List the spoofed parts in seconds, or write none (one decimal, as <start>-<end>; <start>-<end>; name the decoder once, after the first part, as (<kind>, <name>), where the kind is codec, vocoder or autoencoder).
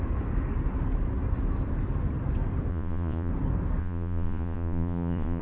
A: 2.7-3.3 (vocoder, Vocos); 3.8-5.4